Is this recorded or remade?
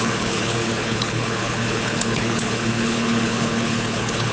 remade